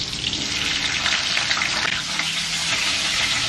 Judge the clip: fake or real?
real